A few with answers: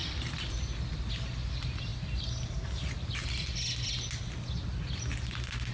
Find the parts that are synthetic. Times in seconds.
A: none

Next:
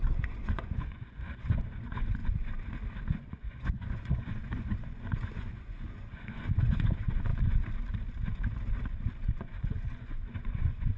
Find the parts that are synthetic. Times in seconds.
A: 0.0-2.2 (vocoder, Vocos); 3.1-7.3; 9.4-11.0

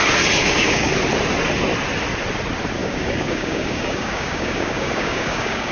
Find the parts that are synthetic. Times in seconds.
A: 0.4-0.9 (codec, DAC); 2.8-5.7

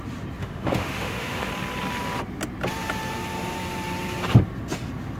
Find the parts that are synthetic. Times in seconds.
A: 0.4-1.5 (autoencoder, DAC-VAE)